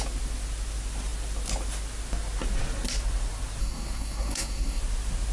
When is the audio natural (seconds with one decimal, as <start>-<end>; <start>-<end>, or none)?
0.0-3.6; 4.8-5.3